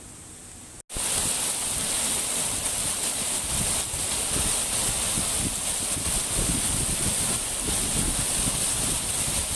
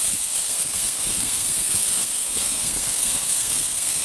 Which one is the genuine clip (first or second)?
first